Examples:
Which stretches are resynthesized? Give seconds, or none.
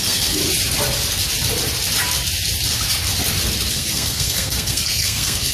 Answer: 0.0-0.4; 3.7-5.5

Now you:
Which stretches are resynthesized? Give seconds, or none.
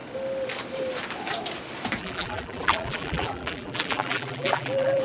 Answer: 2.0-5.0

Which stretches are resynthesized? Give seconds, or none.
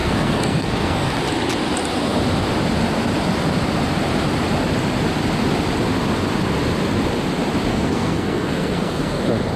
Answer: 0.0-1.1; 7.7-9.2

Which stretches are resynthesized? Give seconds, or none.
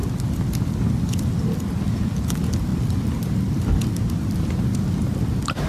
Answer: none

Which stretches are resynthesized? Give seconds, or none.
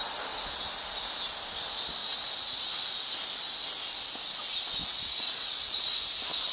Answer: 2.0-3.1; 4.8-6.0